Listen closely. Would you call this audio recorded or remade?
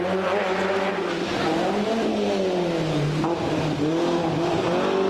recorded